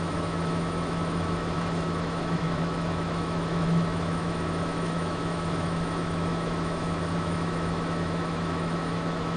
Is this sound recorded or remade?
remade